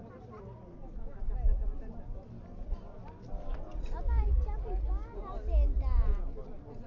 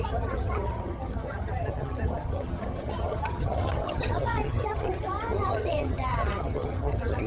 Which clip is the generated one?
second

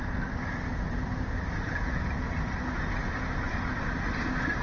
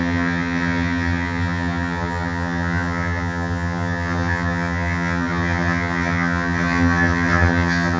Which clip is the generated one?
second